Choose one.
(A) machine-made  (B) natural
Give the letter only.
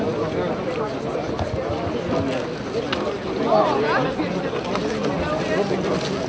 B